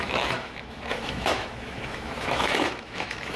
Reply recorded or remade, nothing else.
remade